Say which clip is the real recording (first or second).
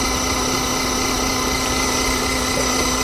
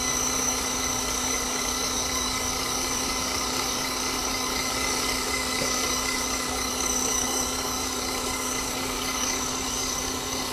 first